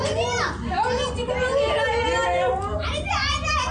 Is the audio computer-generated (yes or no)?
no